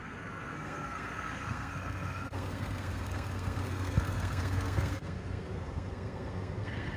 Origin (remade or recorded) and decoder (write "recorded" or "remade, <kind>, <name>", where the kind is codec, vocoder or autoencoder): remade, codec, SNAC